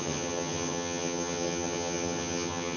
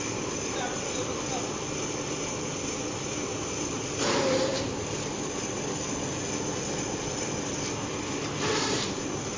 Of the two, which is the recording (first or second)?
second